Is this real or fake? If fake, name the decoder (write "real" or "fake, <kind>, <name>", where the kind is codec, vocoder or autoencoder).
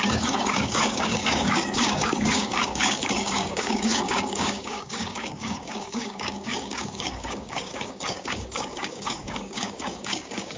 fake, codec, DAC